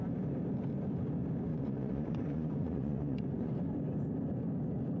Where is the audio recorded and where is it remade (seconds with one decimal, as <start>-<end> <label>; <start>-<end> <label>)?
0.0-1.5 recorded; 1.5-3.5 remade; 3.5-5.0 recorded